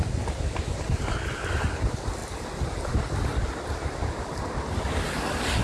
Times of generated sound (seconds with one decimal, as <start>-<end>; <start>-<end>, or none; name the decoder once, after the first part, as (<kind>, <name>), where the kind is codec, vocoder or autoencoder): none